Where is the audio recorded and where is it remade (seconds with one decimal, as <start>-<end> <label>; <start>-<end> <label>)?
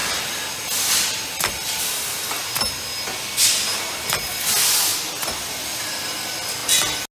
0.0-7.2 recorded